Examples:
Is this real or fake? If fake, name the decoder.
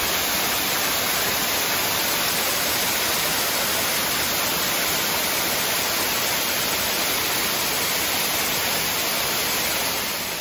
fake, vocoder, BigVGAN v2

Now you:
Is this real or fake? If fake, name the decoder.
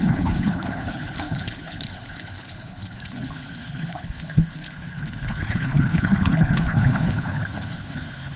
fake, codec, HILCodec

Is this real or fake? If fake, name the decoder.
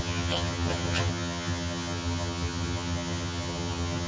fake, vocoder, HiFi-GAN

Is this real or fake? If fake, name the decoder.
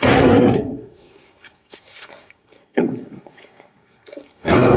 fake, codec, SNAC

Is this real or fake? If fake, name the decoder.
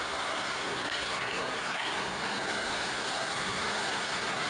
fake, codec, SNAC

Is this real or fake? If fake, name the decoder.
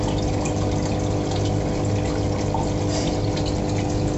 real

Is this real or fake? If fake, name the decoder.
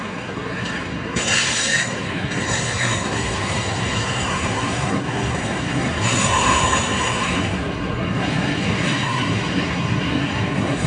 fake, codec, SNAC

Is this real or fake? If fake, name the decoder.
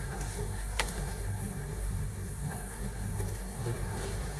fake, codec, SNAC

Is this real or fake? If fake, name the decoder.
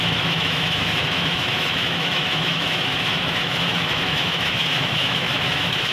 fake, autoencoder, DAC-VAE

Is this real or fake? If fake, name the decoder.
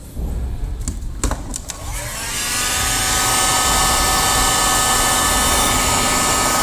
real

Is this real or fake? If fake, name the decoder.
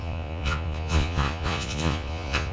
fake, vocoder, Vocos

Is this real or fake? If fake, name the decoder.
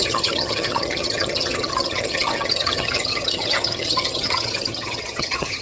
fake, vocoder, HiFi-GAN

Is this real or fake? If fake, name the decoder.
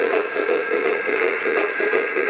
fake, vocoder, Vocos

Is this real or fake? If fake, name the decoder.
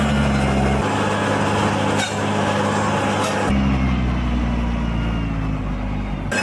real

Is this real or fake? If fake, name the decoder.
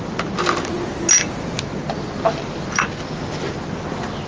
real